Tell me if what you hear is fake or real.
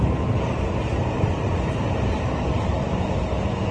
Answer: fake